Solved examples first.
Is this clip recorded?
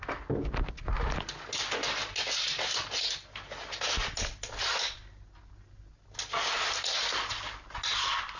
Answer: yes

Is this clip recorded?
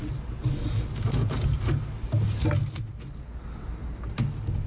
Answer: yes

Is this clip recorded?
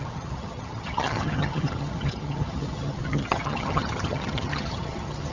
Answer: no